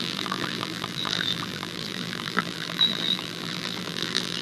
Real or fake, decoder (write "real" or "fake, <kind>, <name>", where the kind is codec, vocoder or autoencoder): fake, vocoder, BigVGAN v2